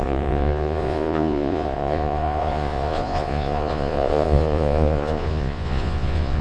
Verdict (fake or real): fake